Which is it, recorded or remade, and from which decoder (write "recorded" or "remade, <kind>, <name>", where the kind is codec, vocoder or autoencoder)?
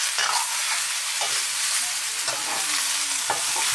recorded